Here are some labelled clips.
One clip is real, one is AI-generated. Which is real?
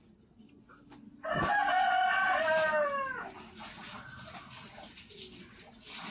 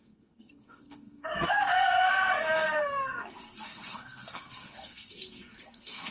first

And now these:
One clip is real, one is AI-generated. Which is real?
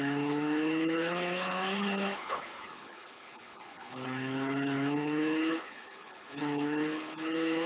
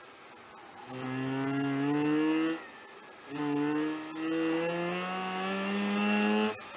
second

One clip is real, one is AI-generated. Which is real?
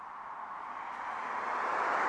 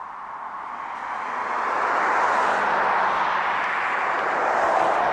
second